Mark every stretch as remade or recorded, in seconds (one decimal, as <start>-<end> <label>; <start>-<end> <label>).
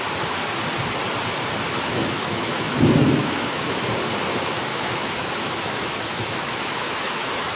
0.0-2.0 recorded; 2.0-2.8 remade; 2.8-3.2 recorded; 3.2-3.8 remade; 3.8-4.7 recorded; 4.7-7.6 remade